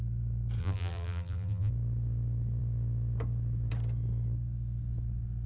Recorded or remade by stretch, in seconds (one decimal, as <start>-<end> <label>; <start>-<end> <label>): 0.0-0.6 recorded; 0.6-1.7 remade; 1.7-5.5 recorded